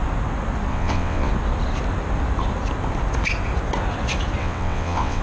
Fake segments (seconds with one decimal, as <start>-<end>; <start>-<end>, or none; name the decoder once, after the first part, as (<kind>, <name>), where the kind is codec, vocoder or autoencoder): 0.7-1.3 (vocoder, WaveNeXt); 4.4-5.2